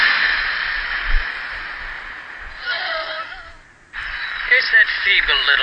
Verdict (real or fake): real